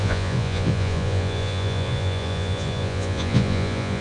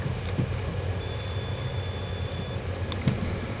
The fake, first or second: first